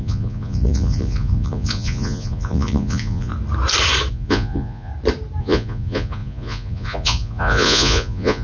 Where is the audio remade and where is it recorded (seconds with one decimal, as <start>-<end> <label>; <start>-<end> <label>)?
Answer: 0.0-3.3 remade; 3.3-4.1 recorded; 4.1-4.9 remade; 4.9-5.4 recorded; 5.4-8.4 remade